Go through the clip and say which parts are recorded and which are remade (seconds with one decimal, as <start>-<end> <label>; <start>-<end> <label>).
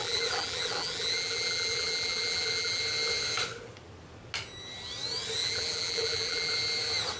0.0-2.8 remade; 2.8-5.4 recorded; 5.4-6.5 remade; 6.5-7.2 recorded